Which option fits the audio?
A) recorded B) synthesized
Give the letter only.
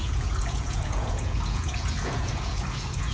B